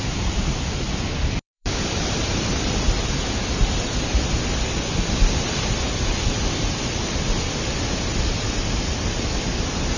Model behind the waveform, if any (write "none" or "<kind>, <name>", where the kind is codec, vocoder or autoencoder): vocoder, BigVGAN v2